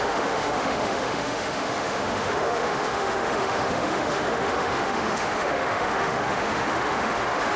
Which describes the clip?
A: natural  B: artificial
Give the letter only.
B